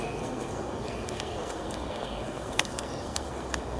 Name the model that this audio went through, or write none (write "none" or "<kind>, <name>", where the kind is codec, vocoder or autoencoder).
codec, SNAC